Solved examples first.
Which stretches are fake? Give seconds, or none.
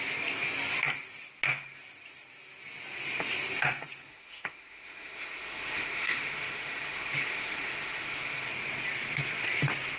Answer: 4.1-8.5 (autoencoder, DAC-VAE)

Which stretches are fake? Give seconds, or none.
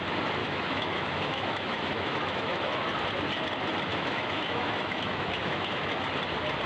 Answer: 0.4-2.7 (autoencoder, DAC-VAE); 3.9-6.1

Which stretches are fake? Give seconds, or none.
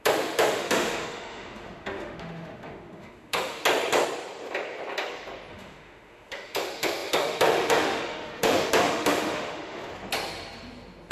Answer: 0.0-3.6 (autoencoder, DAC-VAE); 5.5-9.9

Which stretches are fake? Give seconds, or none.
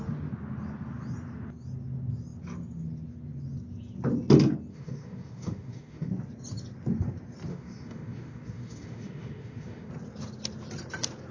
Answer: 4.7-6.1 (autoencoder, DAC-VAE); 7.5-9.9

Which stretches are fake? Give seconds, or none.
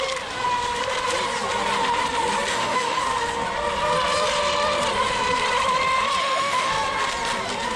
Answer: 2.5-3.0 (autoencoder, DAC-VAE); 6.2-6.7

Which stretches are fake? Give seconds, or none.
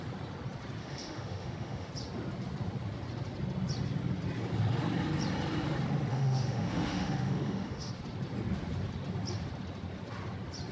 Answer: 0.8-1.9 (autoencoder, DAC-VAE); 6.1-7.9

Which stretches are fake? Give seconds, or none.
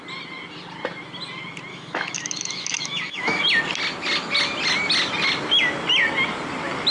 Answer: 1.7-3.4 (autoencoder, DAC-VAE)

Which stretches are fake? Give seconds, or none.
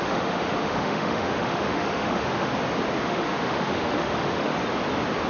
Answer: 0.0-2.5 (autoencoder, DAC-VAE); 3.0-4.5